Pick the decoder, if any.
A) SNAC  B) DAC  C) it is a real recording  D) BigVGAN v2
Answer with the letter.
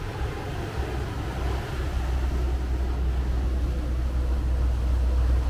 C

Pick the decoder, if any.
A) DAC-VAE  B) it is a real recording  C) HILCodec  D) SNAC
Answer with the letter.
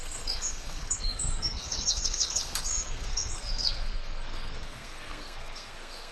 D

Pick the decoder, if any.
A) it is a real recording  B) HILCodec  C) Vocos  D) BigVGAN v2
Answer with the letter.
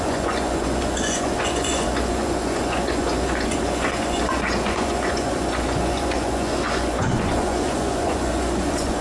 C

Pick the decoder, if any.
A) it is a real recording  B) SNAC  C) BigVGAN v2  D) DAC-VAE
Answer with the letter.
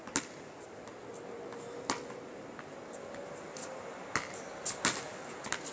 A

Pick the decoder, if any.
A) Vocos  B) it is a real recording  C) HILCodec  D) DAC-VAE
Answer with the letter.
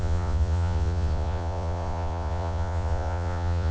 A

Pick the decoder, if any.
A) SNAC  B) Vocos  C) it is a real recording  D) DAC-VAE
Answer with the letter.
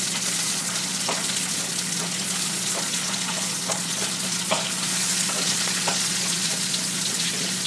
B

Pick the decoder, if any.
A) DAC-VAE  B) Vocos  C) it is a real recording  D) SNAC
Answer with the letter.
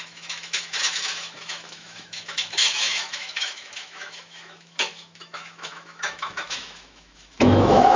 A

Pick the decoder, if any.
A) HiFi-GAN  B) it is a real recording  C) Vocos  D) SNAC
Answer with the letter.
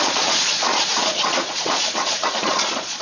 C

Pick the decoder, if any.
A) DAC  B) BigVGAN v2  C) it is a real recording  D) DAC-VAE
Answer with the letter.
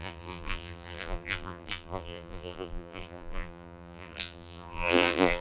B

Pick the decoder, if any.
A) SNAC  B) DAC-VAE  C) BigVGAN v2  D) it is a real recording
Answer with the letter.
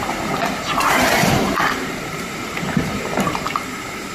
C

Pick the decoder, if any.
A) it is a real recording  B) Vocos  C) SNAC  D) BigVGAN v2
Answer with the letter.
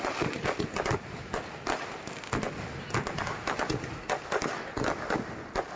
A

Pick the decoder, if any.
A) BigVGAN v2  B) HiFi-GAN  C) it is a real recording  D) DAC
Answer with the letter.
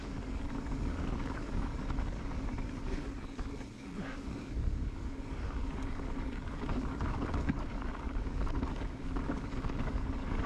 D